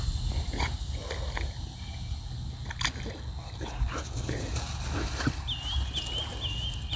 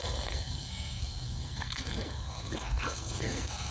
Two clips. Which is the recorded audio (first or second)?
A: first